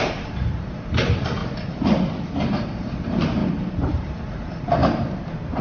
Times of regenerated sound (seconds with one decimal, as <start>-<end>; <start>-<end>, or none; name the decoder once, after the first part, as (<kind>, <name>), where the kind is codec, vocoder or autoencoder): 0.0-1.4 (vocoder, BigVGAN v2); 2.3-3.4; 3.9-5.6